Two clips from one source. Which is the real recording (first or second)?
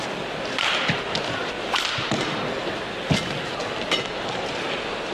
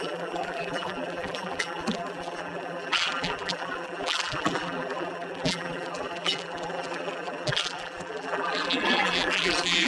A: first